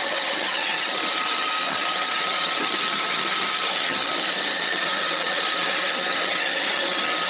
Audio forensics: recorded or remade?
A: remade